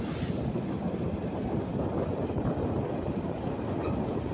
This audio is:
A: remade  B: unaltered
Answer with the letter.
B